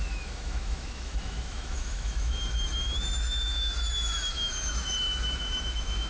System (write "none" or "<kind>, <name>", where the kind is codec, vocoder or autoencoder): autoencoder, DAC-VAE